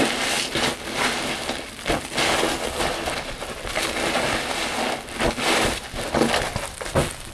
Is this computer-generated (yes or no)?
no